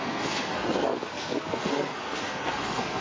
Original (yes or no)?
no